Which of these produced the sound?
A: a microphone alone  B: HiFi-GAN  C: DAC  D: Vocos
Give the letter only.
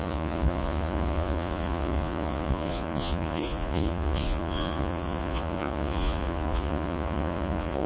D